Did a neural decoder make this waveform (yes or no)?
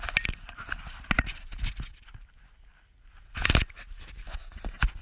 no